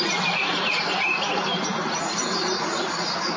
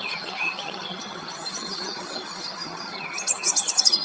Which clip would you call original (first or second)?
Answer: first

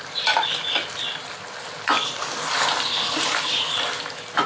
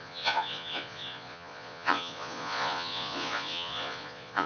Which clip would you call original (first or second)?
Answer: first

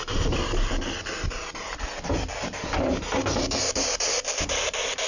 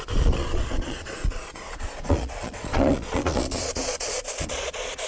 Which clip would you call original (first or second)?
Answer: first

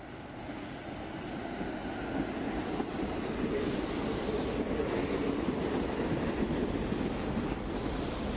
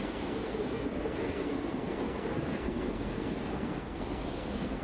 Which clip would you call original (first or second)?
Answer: first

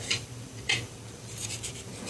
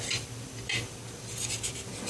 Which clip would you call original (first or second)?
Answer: second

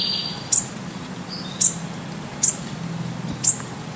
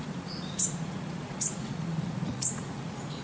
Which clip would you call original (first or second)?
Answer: first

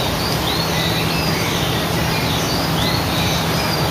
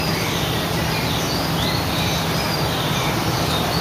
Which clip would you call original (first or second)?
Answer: first